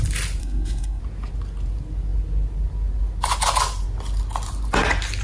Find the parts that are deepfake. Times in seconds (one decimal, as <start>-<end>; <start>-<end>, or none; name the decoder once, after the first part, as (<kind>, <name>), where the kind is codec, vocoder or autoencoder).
0.4-1.0 (codec, SNAC)

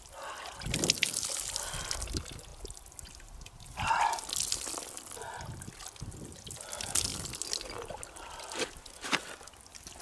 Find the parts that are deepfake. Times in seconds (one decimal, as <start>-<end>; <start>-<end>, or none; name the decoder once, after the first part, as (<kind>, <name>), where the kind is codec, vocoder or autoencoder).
none

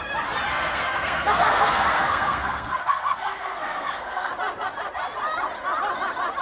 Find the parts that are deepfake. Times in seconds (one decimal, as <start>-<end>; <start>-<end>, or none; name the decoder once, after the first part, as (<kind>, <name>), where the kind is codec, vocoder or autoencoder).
0.5-4.3 (codec, SNAC)

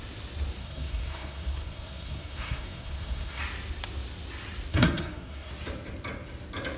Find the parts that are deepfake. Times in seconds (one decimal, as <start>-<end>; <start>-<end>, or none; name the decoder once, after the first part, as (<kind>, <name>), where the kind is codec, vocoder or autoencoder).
0.6-3.4 (codec, SNAC); 4.7-5.5